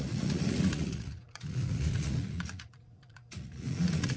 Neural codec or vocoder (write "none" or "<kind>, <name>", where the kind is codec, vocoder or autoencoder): vocoder, Vocos